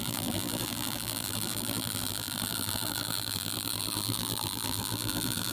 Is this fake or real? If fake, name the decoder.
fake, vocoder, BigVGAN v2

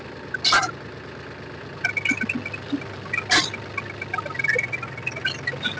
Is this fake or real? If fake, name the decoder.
real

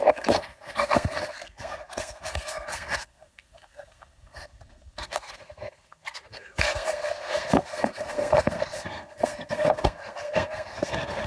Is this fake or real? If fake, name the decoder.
fake, codec, SNAC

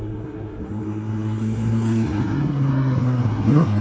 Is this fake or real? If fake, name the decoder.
fake, codec, SNAC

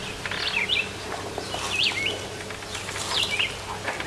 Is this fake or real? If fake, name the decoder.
real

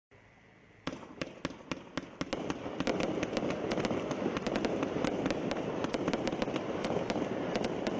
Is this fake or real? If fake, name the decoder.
real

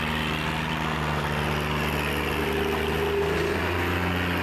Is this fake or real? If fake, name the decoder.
real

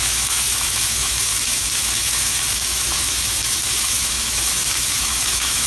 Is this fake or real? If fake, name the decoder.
fake, autoencoder, DAC-VAE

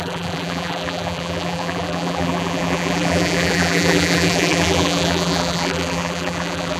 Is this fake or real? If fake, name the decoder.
fake, vocoder, BigVGAN v2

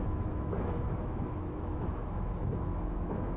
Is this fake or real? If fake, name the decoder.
fake, autoencoder, DAC-VAE